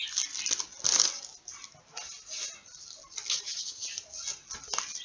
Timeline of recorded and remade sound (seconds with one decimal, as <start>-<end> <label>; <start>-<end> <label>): 0.0-5.0 recorded